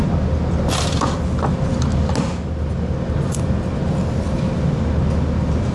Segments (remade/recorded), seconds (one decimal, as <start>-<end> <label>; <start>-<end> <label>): 0.0-5.7 recorded